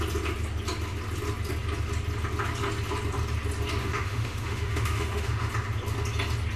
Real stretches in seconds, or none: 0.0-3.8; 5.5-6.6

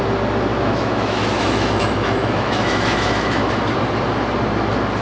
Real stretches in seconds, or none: 0.0-0.5; 3.5-5.0